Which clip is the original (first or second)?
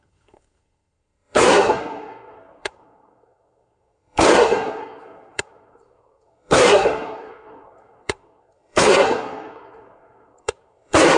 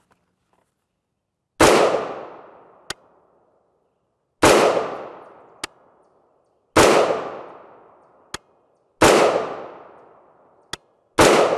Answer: second